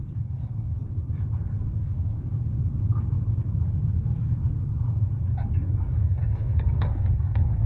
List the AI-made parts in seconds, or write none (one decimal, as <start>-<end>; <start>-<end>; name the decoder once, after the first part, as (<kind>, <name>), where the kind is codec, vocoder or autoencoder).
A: 0.0-0.8 (codec, SNAC); 1.7-2.3; 6.0-7.7